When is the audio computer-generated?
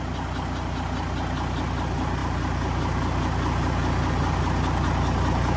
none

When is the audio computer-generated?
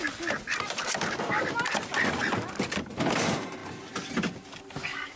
0.0-2.2 (vocoder, BigVGAN v2); 3.1-3.6; 4.6-5.2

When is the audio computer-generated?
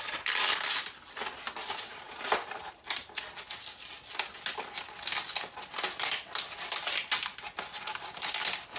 1.6-2.2 (vocoder, BigVGAN v2)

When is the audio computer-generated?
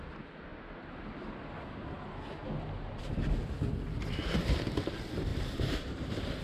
5.3-6.4 (vocoder, BigVGAN v2)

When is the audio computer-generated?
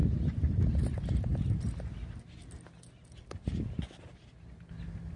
none